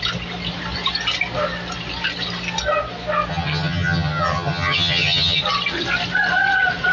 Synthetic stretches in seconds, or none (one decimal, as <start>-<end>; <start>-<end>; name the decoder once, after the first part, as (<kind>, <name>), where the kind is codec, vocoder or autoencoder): 3.3-5.4 (vocoder, HiFi-GAN)